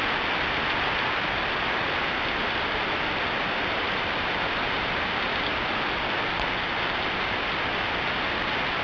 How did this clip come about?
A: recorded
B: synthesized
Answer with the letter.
A